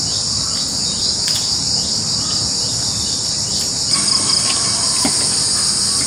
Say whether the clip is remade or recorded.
recorded